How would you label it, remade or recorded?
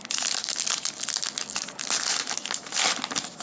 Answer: recorded